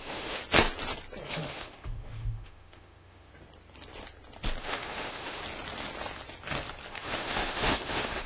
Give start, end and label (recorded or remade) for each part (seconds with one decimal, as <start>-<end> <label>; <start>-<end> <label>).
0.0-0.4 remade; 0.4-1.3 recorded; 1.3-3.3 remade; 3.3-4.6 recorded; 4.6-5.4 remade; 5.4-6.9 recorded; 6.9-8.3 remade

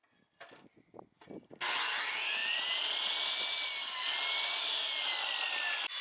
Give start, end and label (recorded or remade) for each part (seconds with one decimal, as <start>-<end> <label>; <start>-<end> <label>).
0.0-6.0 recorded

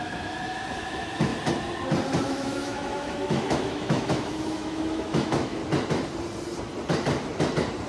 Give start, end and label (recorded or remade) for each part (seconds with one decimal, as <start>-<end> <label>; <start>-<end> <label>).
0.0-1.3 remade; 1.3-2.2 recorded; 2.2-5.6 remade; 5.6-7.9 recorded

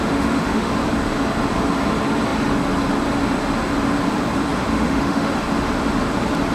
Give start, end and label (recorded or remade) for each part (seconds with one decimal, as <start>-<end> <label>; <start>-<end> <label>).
0.0-0.7 remade; 0.7-4.7 recorded; 4.7-5.3 remade; 5.3-6.5 recorded